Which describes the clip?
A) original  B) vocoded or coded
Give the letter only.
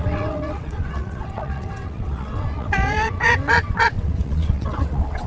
B